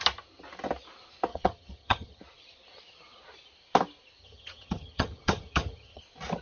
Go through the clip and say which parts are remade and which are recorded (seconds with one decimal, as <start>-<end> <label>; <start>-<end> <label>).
0.0-1.3 recorded; 1.3-2.2 remade; 2.2-4.2 recorded; 4.2-6.0 remade; 6.0-6.4 recorded